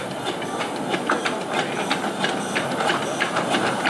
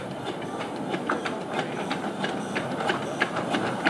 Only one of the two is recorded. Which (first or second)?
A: first